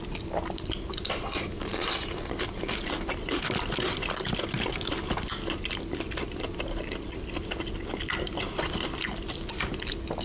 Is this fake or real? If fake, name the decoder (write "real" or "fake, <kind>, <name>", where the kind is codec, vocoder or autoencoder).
real